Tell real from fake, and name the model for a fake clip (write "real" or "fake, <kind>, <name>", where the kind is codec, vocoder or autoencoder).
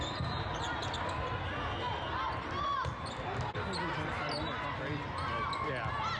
real